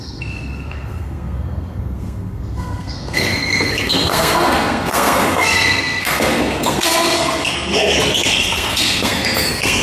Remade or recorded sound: remade